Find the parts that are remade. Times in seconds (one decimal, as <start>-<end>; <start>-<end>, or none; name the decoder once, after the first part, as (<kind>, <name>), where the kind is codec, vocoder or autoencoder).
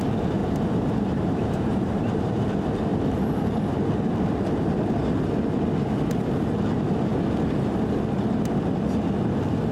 0.4-2.4 (vocoder, BigVGAN v2)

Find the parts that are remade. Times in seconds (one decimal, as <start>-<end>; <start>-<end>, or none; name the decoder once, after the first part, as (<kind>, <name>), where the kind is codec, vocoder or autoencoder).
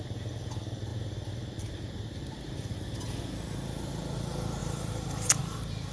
4.6-5.4 (vocoder, BigVGAN v2)